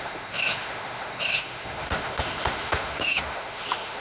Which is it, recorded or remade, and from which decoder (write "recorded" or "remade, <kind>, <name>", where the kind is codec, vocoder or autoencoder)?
remade, autoencoder, DAC-VAE